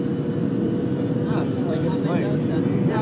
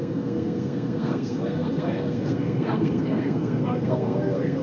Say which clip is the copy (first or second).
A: second